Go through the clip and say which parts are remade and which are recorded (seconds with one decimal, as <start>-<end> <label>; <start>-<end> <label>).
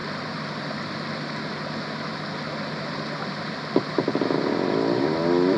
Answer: 0.0-5.6 recorded